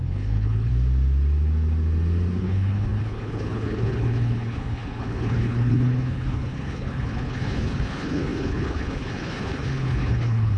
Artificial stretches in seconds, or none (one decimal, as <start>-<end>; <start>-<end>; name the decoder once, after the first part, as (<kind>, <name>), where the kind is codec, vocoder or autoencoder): 0.0-0.7 (codec, HILCodec); 2.4-10.6

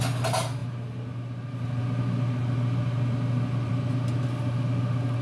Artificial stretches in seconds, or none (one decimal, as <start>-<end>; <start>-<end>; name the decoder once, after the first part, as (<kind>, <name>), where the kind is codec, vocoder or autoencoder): none

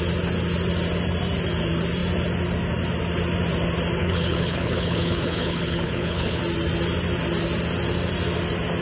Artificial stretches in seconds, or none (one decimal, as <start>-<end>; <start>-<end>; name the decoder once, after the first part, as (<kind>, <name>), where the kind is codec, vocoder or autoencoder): 4.0-6.4 (codec, HILCodec)

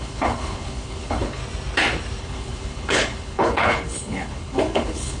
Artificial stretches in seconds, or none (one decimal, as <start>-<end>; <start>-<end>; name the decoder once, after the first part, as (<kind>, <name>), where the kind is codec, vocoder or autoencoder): 0.0-1.4 (codec, HILCodec); 2.2-5.2